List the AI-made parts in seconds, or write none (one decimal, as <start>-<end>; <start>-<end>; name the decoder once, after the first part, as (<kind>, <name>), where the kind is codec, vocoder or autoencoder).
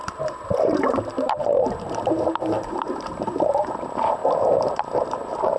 0.0-4.2 (vocoder, BigVGAN v2); 5.0-5.6